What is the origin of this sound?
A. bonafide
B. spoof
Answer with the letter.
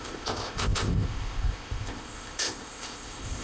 B